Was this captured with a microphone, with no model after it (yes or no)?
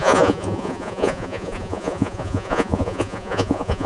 no